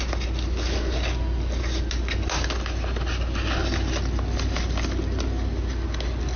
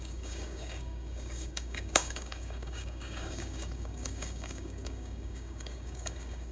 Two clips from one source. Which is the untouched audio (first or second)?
first